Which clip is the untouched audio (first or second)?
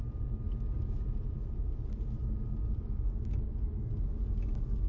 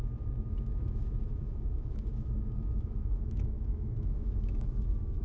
first